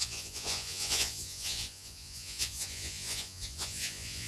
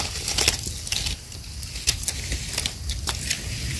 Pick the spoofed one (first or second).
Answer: first